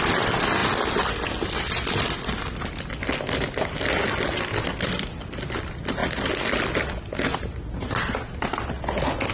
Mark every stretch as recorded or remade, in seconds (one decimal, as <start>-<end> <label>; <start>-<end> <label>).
0.0-9.3 recorded